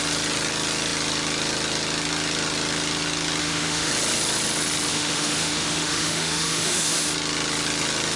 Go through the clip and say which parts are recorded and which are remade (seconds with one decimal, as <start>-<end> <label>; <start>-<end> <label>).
0.0-3.4 recorded; 3.4-3.9 remade; 3.9-4.9 recorded; 4.9-7.1 remade; 7.1-8.2 recorded